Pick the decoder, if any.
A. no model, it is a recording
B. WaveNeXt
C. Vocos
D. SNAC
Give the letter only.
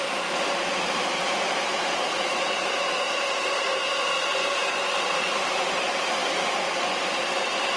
A